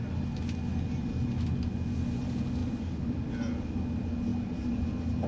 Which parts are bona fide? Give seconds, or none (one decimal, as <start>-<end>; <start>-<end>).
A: 0.0-2.6; 3.3-4.3